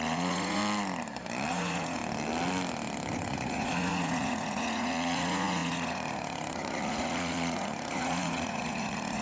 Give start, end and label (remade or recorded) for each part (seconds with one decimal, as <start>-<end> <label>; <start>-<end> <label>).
0.0-0.6 remade; 0.6-1.5 recorded; 1.5-2.0 remade; 2.0-3.1 recorded; 3.1-9.2 remade